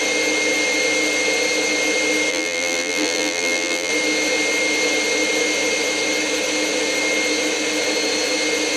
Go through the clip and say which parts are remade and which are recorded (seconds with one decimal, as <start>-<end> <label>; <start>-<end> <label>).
0.0-2.3 recorded; 2.3-3.9 remade; 3.9-8.8 recorded